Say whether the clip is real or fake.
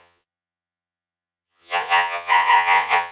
fake